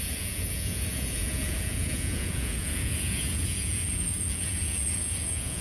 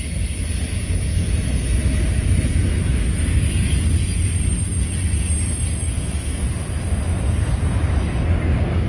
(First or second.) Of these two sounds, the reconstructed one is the first